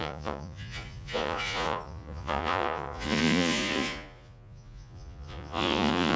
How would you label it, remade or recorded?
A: remade